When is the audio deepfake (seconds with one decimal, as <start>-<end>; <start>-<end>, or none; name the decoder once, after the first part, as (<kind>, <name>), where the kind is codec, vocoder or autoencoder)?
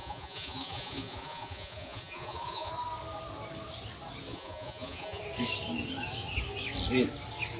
0.0-2.7 (vocoder, Vocos); 4.3-5.2